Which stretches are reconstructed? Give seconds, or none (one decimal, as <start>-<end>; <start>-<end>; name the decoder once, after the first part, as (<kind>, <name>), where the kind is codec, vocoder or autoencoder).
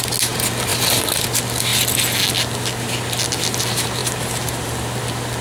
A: 4.0-4.7 (vocoder, BigVGAN v2)